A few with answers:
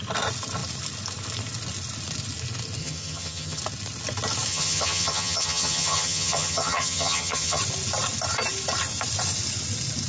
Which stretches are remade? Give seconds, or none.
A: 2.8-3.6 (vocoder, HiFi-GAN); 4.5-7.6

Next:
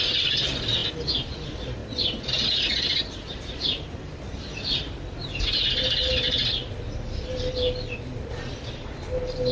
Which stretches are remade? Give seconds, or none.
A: none

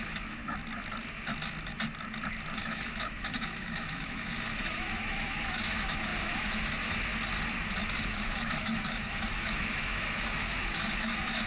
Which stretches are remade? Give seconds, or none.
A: 0.0-0.4 (autoencoder, DAC-VAE); 2.6-7.1; 8.0-11.5

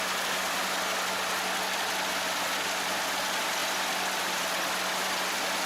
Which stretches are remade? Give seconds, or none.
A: none